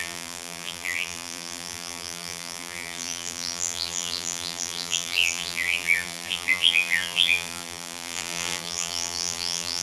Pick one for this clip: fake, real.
fake